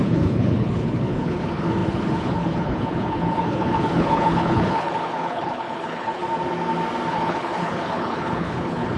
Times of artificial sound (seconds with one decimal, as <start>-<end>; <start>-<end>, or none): 0.0-6.2; 7.1-9.0